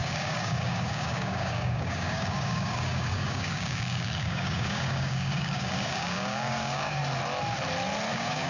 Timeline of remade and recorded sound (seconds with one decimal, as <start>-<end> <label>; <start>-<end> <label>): 0.0-7.0 remade; 7.0-8.1 recorded; 8.1-8.5 remade